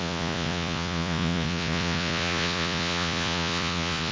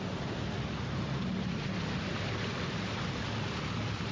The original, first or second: second